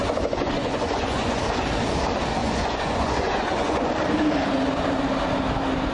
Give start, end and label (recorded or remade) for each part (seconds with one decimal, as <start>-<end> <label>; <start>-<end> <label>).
0.0-1.4 remade; 1.4-2.4 recorded; 2.4-3.9 remade; 3.9-5.9 recorded